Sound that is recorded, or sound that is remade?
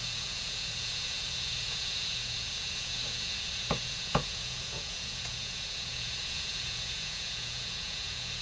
remade